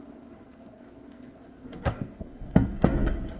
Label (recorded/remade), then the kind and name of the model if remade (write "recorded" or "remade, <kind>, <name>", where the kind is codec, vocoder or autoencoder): remade, codec, SNAC